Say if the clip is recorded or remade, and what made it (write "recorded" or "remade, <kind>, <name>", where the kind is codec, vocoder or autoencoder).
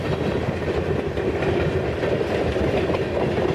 recorded